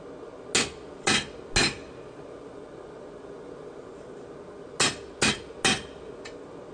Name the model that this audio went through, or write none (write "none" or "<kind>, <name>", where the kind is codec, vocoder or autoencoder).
none